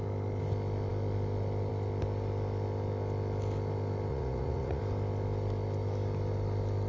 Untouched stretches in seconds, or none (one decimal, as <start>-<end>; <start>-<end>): 0.0-4.1; 4.8-6.9